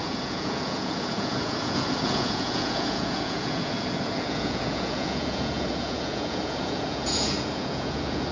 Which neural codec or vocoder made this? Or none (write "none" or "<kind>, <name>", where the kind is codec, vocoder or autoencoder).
vocoder, Vocos